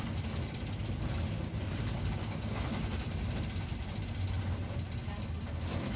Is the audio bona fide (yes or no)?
yes